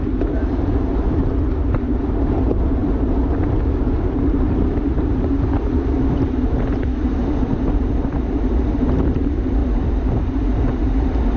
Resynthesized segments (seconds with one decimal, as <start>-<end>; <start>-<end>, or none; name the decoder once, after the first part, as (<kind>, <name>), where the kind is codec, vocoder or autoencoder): 0.0-9.6 (vocoder, BigVGAN v2); 10.2-11.4